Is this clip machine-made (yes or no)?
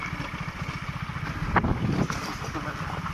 no